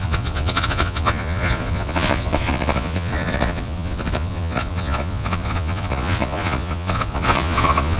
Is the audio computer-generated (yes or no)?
yes